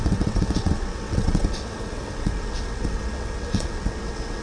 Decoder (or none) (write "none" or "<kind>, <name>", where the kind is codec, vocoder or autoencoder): vocoder, WaveNeXt